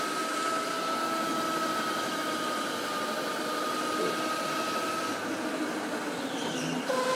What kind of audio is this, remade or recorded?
recorded